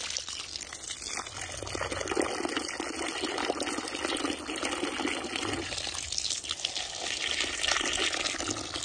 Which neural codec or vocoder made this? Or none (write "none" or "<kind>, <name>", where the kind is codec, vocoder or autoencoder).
none